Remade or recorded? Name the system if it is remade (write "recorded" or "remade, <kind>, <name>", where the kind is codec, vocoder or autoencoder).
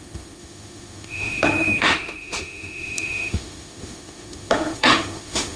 remade, autoencoder, DAC-VAE